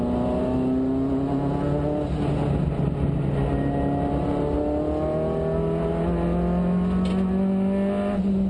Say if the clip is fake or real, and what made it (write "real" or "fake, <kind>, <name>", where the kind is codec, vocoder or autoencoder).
real